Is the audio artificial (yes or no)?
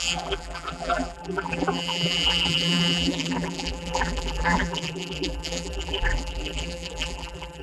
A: yes